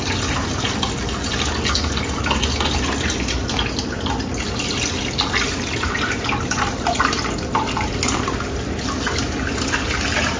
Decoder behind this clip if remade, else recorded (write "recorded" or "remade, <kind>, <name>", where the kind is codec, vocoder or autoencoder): recorded